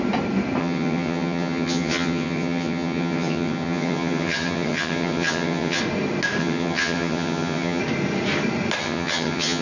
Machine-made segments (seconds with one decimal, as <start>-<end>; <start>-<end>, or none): 0.6-5.8; 6.4-7.8; 8.8-9.6